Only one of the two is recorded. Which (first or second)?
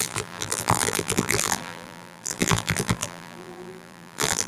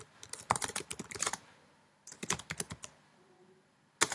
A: second